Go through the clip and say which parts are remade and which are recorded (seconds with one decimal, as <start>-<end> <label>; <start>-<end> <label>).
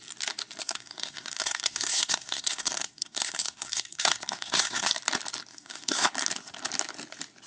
0.0-0.6 recorded; 0.6-4.9 remade; 4.9-5.5 recorded; 5.5-6.1 remade; 6.1-7.5 recorded